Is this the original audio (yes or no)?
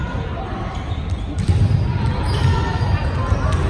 yes